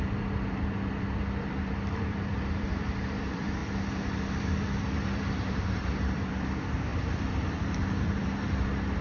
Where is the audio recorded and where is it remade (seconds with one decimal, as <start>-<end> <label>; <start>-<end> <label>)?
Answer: 0.0-3.6 remade; 3.6-4.3 recorded; 4.3-9.0 remade